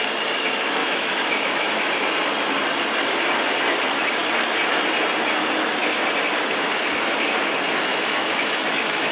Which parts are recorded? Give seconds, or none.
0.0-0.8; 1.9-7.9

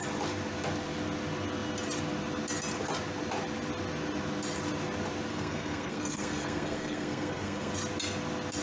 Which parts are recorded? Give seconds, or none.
0.0-5.3; 7.7-8.6

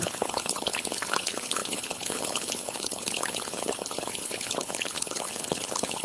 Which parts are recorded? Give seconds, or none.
none

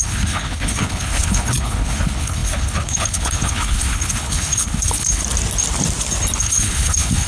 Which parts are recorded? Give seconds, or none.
5.2-6.4

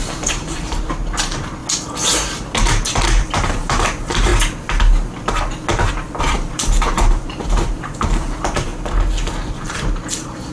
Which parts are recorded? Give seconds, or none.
1.6-2.3; 4.3-6.2; 8.7-9.5

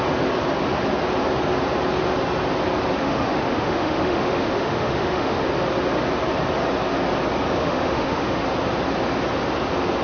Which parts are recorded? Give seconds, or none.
0.0-3.0; 5.4-7.6; 8.4-10.0

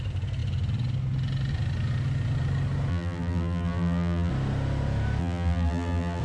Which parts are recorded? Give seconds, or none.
0.0-2.9; 4.3-5.2

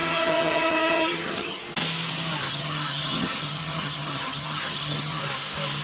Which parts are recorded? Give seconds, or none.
1.6-2.5; 5.2-5.8